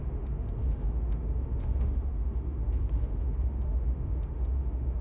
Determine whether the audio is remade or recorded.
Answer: remade